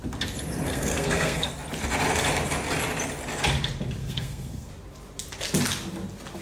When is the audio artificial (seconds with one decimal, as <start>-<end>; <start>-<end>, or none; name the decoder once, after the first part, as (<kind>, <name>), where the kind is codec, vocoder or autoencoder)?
0.7-1.5 (codec, SNAC); 4.0-4.7